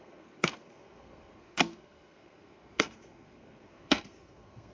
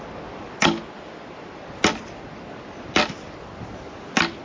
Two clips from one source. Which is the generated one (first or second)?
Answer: first